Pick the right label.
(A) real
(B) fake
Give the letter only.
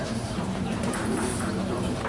B